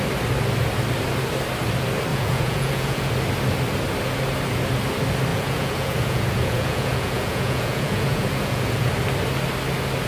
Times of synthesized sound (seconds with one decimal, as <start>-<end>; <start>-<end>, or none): 2.1-3.1; 5.3-8.9